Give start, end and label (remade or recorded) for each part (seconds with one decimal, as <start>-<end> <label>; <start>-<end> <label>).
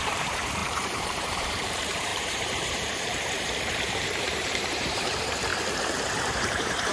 0.0-5.5 remade; 5.5-6.1 recorded; 6.1-6.9 remade